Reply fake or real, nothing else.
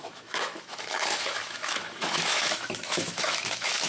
fake